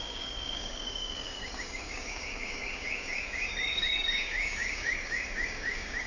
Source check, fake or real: fake